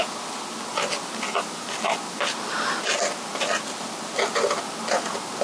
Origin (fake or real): real